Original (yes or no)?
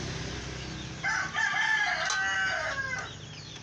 yes